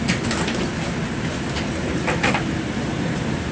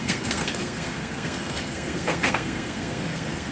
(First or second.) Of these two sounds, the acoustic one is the first